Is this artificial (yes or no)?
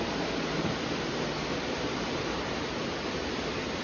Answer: no